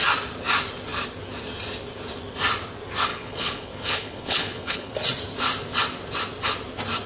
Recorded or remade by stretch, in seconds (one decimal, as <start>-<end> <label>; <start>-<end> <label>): 0.0-3.1 recorded; 3.1-4.9 remade; 4.9-7.1 recorded